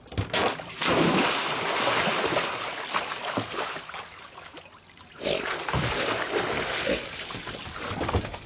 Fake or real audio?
real